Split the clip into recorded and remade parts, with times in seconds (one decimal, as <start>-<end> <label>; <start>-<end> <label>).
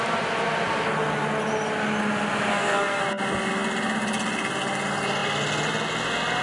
0.0-2.5 recorded; 2.5-3.0 remade; 3.0-6.4 recorded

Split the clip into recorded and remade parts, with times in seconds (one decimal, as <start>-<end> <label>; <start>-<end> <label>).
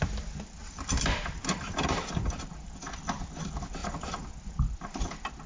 0.0-0.6 recorded; 0.6-2.1 remade; 2.1-3.8 recorded; 3.8-4.3 remade; 4.3-5.5 recorded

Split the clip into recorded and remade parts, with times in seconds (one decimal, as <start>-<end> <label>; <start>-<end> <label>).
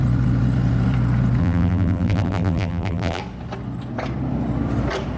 0.0-1.4 recorded; 1.4-3.2 remade; 3.2-5.2 recorded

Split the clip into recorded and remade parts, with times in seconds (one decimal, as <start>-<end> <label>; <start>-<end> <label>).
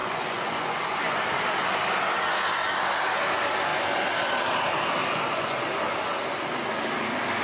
0.0-1.2 remade; 1.2-5.0 recorded; 5.0-5.6 remade; 5.6-7.4 recorded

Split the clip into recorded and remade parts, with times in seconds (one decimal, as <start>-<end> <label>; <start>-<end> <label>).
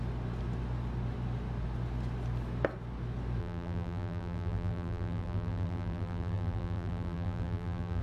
0.0-3.4 recorded; 3.4-8.0 remade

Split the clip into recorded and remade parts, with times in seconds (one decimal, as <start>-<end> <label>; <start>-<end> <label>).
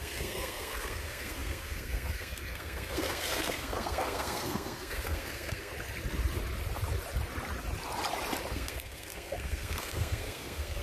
0.0-5.7 remade; 5.7-8.5 recorded; 8.5-10.8 remade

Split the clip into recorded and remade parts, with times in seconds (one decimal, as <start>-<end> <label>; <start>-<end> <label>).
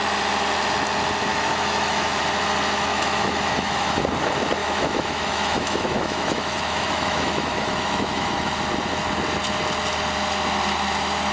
0.0-1.3 recorded; 1.3-2.2 remade; 2.2-2.9 recorded; 2.9-4.0 remade; 4.0-4.6 recorded; 4.6-8.5 remade; 8.5-11.3 recorded